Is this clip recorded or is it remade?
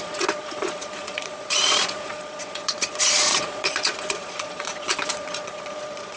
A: remade